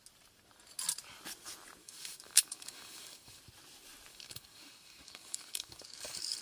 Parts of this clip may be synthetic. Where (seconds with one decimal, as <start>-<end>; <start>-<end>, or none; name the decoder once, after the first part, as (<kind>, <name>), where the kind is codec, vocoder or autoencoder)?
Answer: 1.8-3.4 (codec, DAC); 4.1-6.4